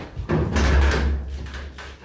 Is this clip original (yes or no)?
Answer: yes